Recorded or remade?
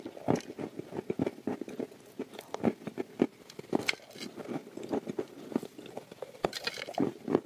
recorded